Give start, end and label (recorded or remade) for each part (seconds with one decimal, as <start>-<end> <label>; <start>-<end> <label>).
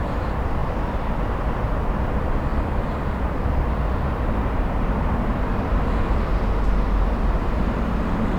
0.0-2.5 remade; 2.5-3.6 recorded; 3.6-6.3 remade; 6.3-7.1 recorded; 7.1-8.4 remade